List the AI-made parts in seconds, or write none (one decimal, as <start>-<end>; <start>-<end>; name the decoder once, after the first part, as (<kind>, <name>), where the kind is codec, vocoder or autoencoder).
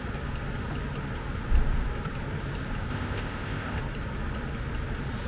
2.9-3.8 (codec, ZipCodec)